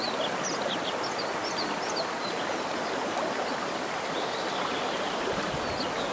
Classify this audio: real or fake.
real